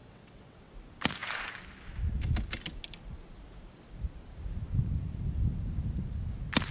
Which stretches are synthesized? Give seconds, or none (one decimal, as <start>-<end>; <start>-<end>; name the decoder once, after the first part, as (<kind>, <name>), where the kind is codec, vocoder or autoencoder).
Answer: 0.0-0.7 (vocoder, WaveNeXt)